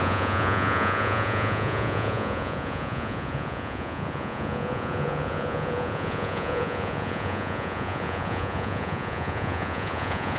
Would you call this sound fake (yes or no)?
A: yes